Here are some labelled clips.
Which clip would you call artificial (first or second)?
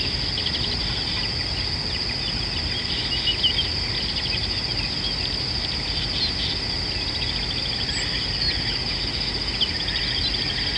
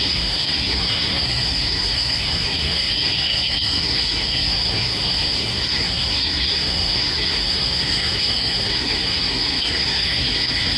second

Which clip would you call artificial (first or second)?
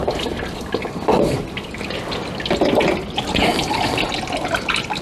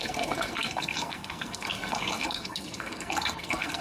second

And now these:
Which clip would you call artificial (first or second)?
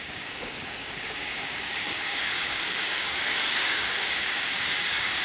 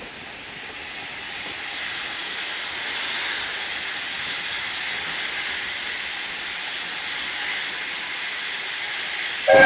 first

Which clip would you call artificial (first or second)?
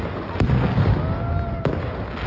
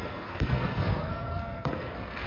second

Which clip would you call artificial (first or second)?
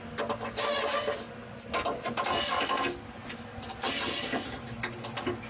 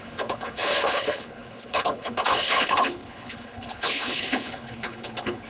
second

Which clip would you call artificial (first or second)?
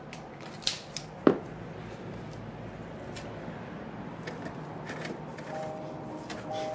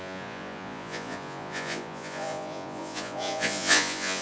second